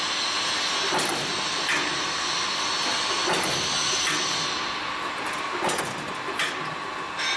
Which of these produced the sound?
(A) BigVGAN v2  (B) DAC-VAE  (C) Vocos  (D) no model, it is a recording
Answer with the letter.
D